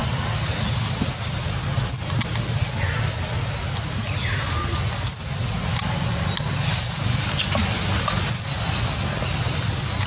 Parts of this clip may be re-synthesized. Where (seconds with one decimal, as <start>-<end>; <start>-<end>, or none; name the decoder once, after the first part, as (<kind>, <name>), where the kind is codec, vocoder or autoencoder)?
none